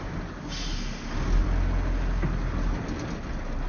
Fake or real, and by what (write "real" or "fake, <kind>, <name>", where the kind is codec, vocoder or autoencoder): real